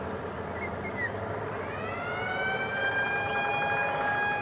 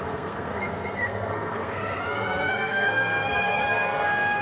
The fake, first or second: second